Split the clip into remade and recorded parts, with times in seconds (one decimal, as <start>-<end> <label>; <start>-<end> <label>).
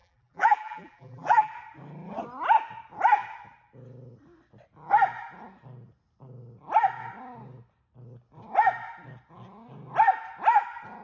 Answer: 0.0-1.5 remade; 1.5-11.0 recorded